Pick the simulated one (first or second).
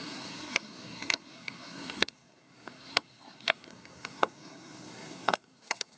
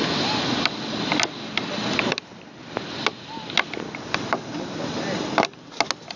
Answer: first